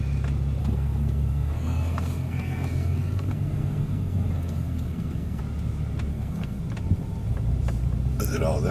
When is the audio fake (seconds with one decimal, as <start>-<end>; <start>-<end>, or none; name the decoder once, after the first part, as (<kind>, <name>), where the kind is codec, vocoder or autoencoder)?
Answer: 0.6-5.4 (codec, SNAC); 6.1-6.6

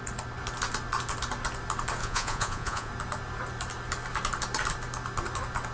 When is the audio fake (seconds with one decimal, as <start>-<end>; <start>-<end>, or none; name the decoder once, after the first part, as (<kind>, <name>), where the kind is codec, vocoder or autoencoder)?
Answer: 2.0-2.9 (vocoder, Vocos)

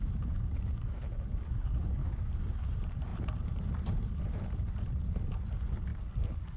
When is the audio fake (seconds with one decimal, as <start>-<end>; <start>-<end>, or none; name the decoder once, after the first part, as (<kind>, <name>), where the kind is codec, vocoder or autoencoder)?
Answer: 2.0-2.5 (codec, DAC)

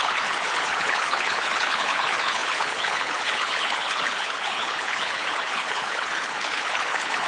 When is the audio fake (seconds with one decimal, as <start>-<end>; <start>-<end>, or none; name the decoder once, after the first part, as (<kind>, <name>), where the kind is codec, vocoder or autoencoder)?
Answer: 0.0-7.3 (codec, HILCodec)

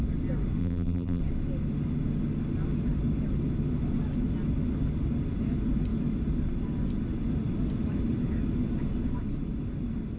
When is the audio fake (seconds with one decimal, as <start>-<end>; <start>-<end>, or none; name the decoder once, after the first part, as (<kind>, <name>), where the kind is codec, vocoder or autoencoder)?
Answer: 0.6-1.2 (vocoder, BigVGAN v2)

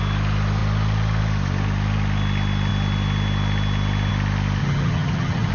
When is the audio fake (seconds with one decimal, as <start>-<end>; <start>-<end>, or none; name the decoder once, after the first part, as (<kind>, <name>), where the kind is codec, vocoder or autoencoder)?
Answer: 4.6-5.5 (vocoder, HiFi-GAN)